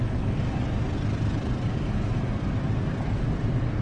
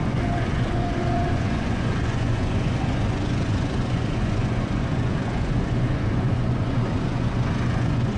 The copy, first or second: second